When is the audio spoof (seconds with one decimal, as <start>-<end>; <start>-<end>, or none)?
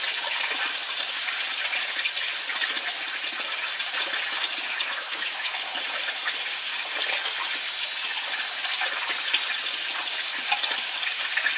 4.7-5.5